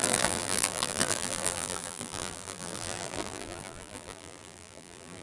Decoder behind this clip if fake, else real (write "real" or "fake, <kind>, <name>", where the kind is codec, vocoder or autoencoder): fake, vocoder, BigVGAN v2